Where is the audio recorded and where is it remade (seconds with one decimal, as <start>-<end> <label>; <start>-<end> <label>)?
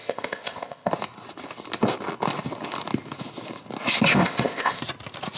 0.0-0.9 remade; 0.9-4.1 recorded; 4.1-4.8 remade; 4.8-5.4 recorded